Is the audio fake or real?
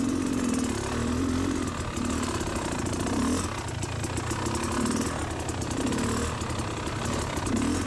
real